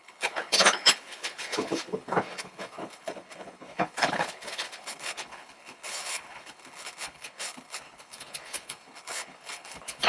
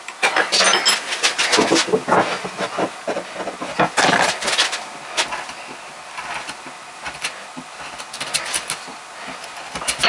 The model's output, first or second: first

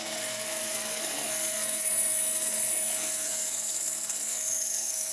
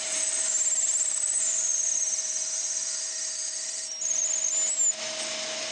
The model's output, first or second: first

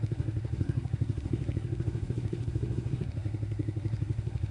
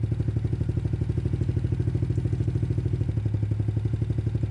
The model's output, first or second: first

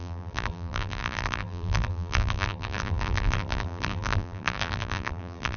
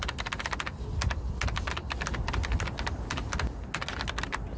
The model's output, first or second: first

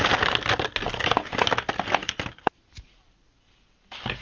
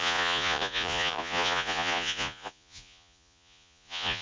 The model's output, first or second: second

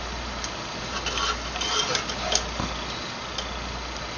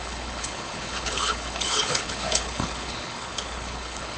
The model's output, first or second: second